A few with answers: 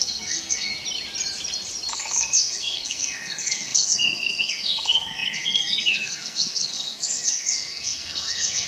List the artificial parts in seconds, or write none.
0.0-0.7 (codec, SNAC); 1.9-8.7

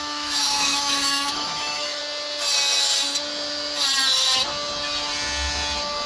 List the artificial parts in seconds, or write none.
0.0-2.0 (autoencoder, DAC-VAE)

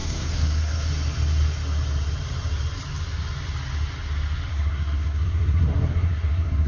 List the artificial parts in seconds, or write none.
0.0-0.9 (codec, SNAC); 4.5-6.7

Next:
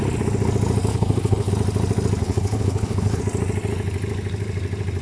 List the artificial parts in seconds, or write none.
0.9-1.5 (codec, HILCodec); 2.2-3.2

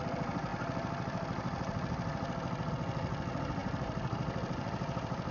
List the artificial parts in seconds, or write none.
3.6-5.3 (vocoder, BigVGAN v2)

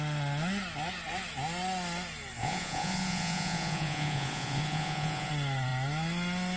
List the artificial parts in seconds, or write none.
2.4-5.3 (vocoder, Vocos)

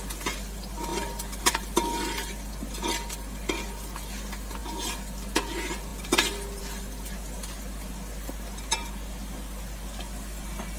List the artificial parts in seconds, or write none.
5.9-6.6 (vocoder, BigVGAN v2)